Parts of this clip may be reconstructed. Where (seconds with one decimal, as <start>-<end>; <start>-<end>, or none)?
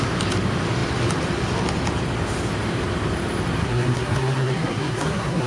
3.6-5.5